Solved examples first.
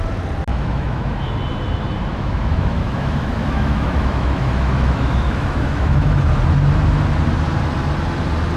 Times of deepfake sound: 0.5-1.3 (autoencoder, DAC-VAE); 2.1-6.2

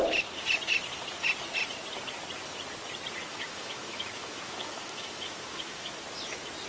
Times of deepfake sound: 3.3-5.9 (autoencoder, DAC-VAE)

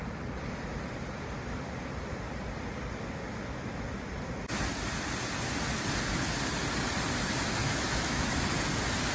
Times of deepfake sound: 7.6-8.4 (autoencoder, DAC-VAE)